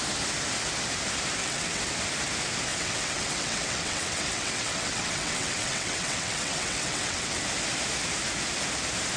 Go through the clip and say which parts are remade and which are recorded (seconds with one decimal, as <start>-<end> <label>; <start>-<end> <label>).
0.0-1.4 recorded; 1.4-1.9 remade; 1.9-2.7 recorded; 2.7-7.4 remade; 7.4-9.2 recorded